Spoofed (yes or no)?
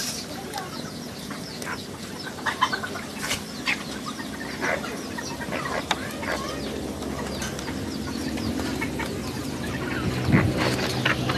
no